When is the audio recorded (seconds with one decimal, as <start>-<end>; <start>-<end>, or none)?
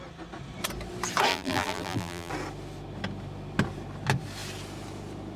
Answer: 0.0-1.3; 2.3-5.4